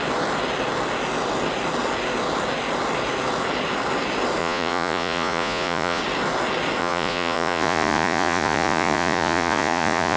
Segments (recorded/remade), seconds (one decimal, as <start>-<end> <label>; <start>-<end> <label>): 0.0-4.4 recorded; 4.4-6.0 remade; 6.0-6.8 recorded; 6.8-10.2 remade